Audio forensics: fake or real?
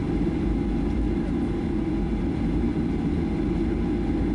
real